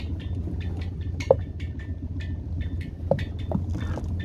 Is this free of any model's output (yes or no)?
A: yes